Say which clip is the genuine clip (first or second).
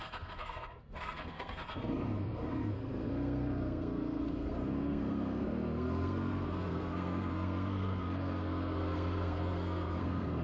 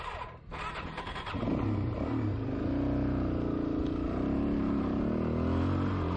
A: second